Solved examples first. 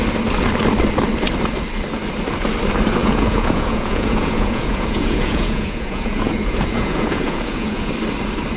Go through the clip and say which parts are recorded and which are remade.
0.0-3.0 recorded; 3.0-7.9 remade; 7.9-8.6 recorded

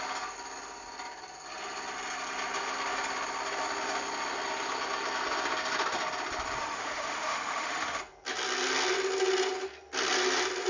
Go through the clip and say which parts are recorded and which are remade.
0.0-6.6 recorded; 6.6-8.0 remade; 8.0-10.7 recorded

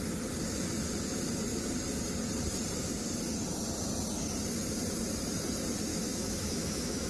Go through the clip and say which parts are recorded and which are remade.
0.0-5.9 recorded; 5.9-7.1 remade

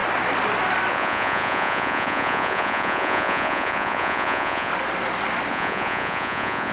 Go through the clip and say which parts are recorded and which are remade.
0.0-0.9 recorded; 0.9-4.7 remade; 4.7-5.5 recorded; 5.5-6.7 remade

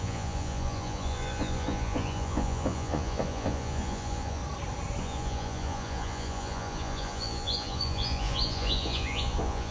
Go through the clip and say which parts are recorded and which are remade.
0.0-4.4 remade; 4.4-5.0 recorded; 5.0-9.7 remade

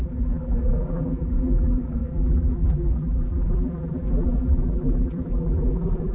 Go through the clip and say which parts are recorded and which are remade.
0.0-6.1 remade